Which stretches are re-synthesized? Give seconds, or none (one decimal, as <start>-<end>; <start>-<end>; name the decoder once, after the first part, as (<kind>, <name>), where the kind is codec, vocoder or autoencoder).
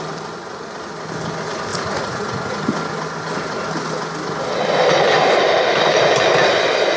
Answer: 1.7-2.7 (vocoder, Vocos)